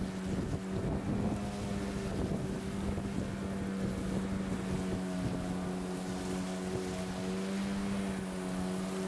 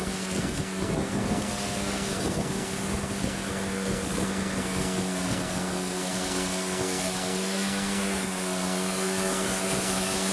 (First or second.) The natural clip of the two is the first